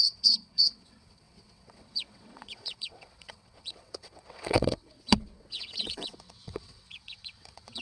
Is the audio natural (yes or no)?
no